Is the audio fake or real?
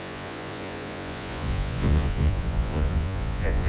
fake